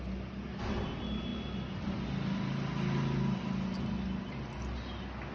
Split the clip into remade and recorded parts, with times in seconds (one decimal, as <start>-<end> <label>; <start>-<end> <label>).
0.0-1.3 recorded; 1.3-1.9 remade; 1.9-5.3 recorded